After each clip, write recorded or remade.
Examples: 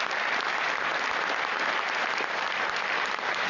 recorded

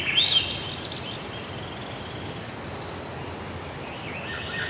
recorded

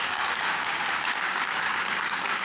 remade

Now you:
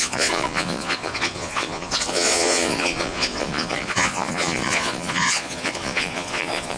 remade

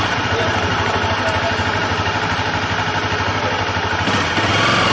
recorded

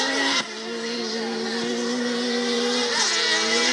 recorded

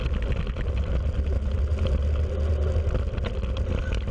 recorded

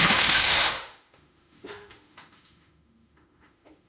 remade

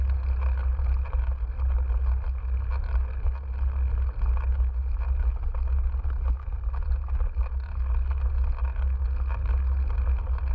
recorded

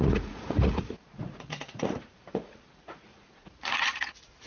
remade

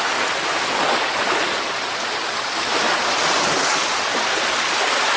recorded